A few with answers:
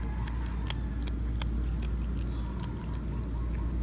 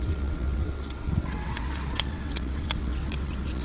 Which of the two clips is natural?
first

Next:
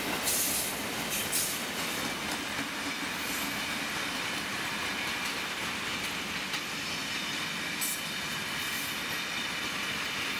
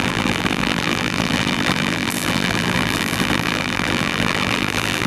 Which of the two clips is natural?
first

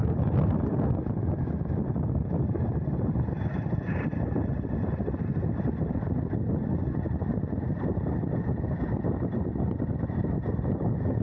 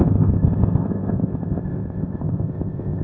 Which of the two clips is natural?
first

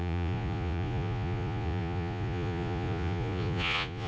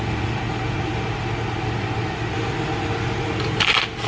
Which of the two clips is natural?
second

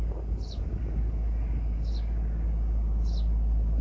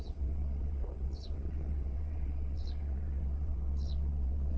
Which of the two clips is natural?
first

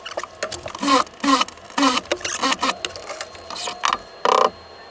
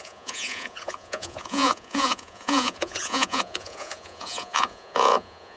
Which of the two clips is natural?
first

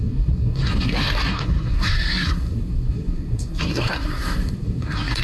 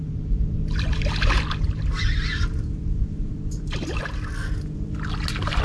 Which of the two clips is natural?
second